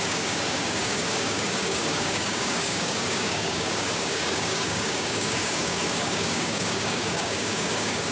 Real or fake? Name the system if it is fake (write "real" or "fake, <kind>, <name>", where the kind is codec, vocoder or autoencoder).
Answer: fake, codec, DAC